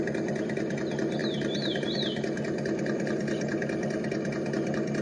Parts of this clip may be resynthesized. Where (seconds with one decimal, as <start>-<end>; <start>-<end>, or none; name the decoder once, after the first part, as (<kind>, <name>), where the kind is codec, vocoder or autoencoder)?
1.2-1.9 (vocoder, BigVGAN v2)